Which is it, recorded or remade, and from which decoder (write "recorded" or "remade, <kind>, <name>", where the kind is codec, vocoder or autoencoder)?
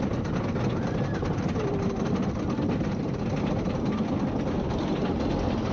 recorded